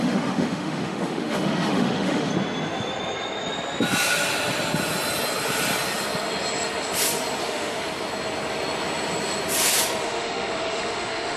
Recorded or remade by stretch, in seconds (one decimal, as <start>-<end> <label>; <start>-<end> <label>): 0.0-2.3 remade; 2.3-7.4 recorded; 7.4-7.9 remade; 7.9-10.0 recorded; 10.0-11.4 remade